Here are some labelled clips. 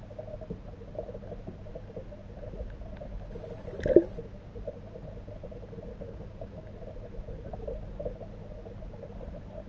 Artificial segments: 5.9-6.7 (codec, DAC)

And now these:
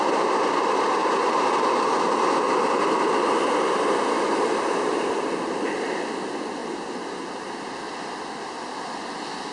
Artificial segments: 1.0-1.7 (vocoder, BigVGAN v2); 6.6-7.6

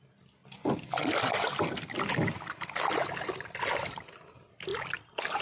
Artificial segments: none

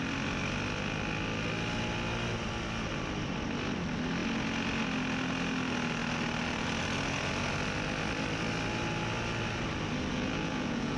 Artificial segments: 10.1-11.0 (vocoder, Vocos)

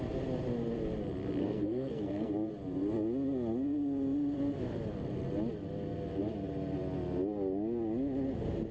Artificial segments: 1.4-2.3 (codec, SNAC)

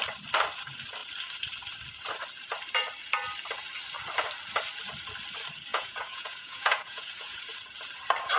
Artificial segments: 5.7-7.4 (vocoder, Vocos)